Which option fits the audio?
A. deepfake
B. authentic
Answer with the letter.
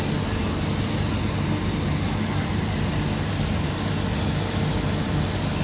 B